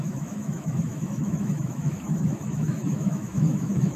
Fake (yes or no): yes